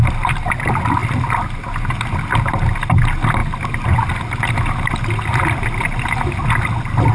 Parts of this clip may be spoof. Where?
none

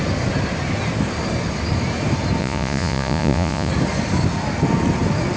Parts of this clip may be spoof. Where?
2.4-3.7